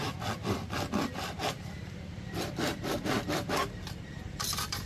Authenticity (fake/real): fake